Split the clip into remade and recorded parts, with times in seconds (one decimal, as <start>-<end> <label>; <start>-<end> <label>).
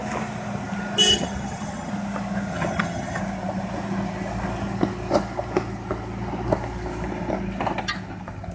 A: 0.0-1.1 recorded; 1.1-1.9 remade; 1.9-2.5 recorded; 2.5-3.2 remade; 3.2-8.5 recorded